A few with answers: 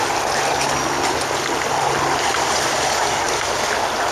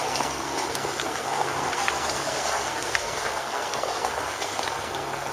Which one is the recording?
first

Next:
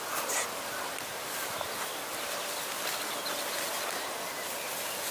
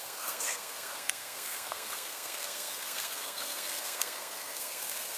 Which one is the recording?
first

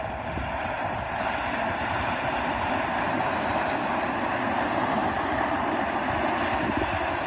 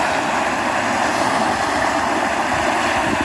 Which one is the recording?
second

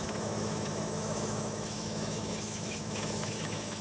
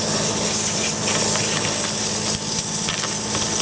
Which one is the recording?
second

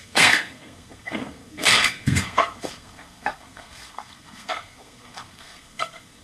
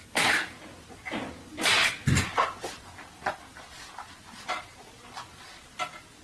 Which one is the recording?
second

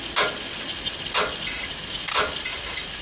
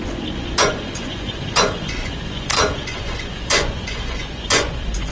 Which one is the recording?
first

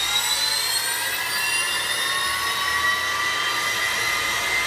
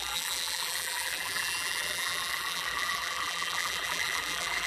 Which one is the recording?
first